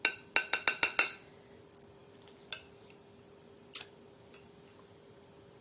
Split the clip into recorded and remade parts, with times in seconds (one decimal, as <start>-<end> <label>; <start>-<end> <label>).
0.0-5.6 recorded